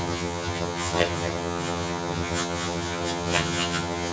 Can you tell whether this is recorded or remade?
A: remade